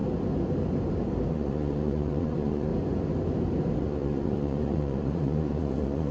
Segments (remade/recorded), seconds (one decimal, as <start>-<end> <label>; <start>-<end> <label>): 0.0-1.3 recorded; 1.3-2.7 remade; 2.7-3.8 recorded; 3.8-6.1 remade

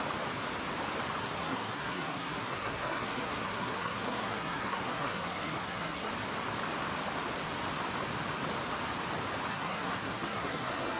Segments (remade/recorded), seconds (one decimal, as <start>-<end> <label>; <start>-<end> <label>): 0.0-1.2 recorded; 1.2-6.1 remade; 6.1-9.5 recorded; 9.5-11.0 remade

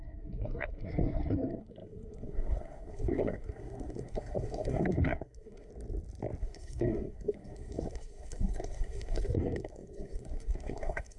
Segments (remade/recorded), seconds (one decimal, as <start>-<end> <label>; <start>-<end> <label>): 0.0-5.7 remade; 5.7-6.4 recorded; 6.4-11.2 remade

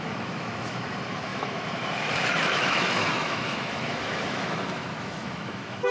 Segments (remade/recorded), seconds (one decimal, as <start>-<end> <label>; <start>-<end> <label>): 0.0-5.9 remade

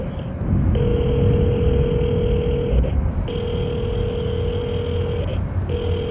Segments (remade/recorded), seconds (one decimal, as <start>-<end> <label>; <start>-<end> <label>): 0.0-6.1 recorded